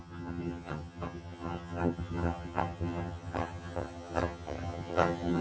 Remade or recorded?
remade